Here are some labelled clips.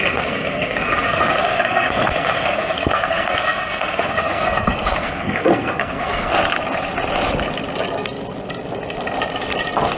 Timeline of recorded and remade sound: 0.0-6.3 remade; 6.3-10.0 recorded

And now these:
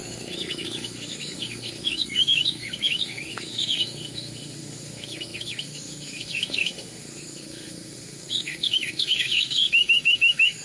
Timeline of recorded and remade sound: 0.0-10.6 remade

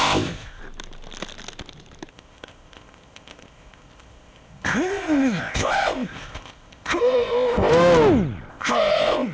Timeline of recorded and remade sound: 0.0-0.6 remade; 0.6-2.1 recorded; 2.1-7.7 remade; 7.7-8.5 recorded; 8.5-9.3 remade

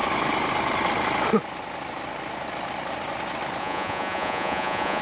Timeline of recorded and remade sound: 0.0-3.6 recorded; 3.6-5.0 remade